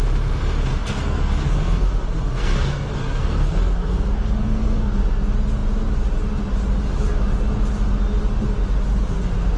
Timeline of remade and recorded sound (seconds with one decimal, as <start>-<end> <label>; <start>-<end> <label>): 0.0-0.7 recorded; 0.7-5.0 remade; 5.0-9.6 recorded

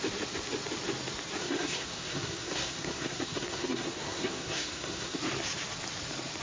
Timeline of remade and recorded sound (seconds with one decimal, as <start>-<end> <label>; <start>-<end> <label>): 0.0-1.4 recorded; 1.4-5.2 remade; 5.2-6.4 recorded

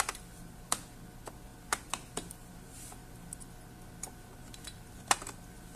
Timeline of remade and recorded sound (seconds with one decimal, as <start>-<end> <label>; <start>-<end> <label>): 0.0-5.8 recorded

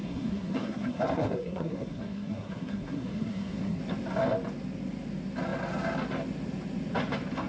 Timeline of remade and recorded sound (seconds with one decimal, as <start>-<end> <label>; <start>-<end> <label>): 0.0-3.8 remade; 3.8-7.5 recorded

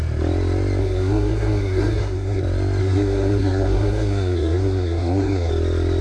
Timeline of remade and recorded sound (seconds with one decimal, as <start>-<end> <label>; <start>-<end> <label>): 0.0-0.8 recorded; 0.8-2.4 remade; 2.4-2.8 recorded; 2.8-5.5 remade; 5.5-6.0 recorded

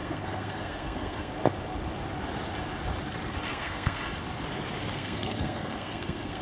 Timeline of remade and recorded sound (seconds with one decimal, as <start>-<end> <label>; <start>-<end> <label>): 0.0-1.3 remade; 1.3-3.5 recorded; 3.5-4.0 remade; 4.0-4.9 recorded; 4.9-6.4 remade